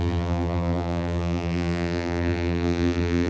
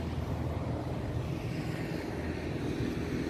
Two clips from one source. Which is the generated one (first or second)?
first